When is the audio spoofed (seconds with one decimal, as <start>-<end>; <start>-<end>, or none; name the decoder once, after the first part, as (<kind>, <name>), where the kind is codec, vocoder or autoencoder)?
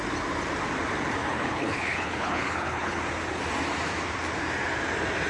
1.2-3.0 (codec, HILCodec)